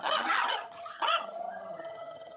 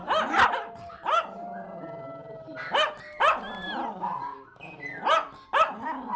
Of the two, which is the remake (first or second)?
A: first